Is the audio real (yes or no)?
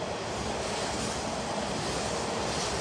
yes